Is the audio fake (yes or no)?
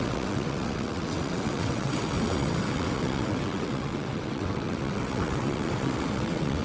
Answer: yes